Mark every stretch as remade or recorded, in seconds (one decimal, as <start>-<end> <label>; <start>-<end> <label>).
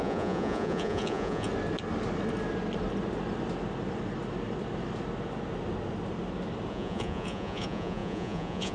0.0-1.5 remade; 1.5-6.7 recorded; 6.7-8.7 remade